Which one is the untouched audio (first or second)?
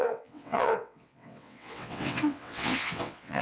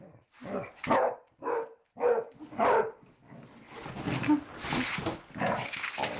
second